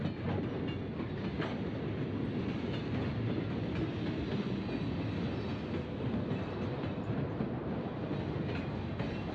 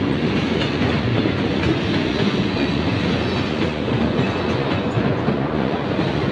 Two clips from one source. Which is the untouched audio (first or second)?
first